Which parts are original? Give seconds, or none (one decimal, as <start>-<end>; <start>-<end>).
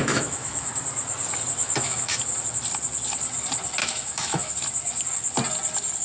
0.7-1.6; 2.2-3.8; 4.5-6.0